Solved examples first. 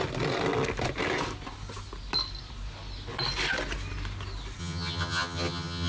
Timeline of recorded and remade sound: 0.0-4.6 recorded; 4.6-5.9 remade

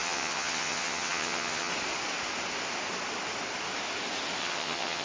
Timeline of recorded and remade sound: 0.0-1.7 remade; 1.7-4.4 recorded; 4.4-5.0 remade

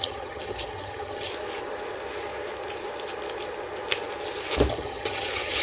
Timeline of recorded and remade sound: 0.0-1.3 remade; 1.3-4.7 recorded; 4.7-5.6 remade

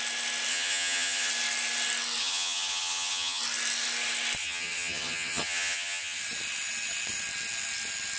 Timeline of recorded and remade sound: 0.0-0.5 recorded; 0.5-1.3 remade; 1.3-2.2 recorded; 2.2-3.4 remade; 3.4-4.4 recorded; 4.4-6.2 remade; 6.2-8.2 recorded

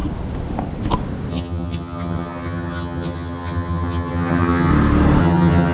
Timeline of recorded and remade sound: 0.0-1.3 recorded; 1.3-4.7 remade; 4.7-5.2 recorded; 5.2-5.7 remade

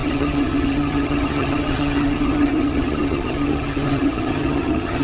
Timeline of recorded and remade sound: 0.0-5.0 remade